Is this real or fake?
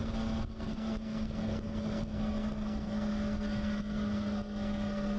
fake